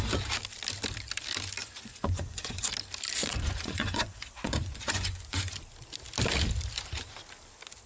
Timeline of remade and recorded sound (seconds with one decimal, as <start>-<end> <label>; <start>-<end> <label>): 0.0-1.6 recorded; 1.6-2.7 remade; 2.7-3.2 recorded; 3.2-5.6 remade; 5.6-7.9 recorded